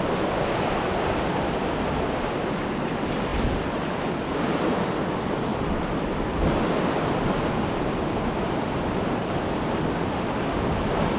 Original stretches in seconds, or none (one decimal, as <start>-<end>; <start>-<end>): 0.0-11.2